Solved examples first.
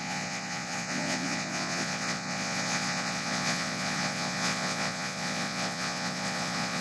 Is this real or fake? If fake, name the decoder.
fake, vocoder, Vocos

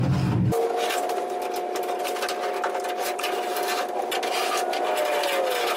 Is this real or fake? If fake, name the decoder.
real